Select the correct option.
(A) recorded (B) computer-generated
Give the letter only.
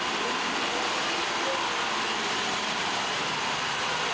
A